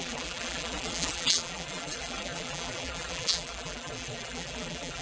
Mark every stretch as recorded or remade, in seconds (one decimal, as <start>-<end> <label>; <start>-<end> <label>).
0.0-5.0 remade